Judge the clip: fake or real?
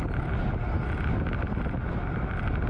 real